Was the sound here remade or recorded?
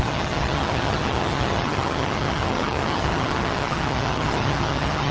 remade